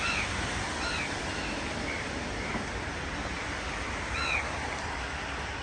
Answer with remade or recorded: recorded